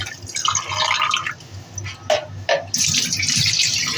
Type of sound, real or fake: real